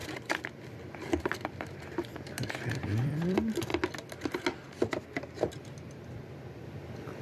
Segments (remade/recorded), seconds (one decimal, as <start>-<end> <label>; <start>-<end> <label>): 0.0-3.7 remade; 3.7-5.2 recorded; 5.2-7.2 remade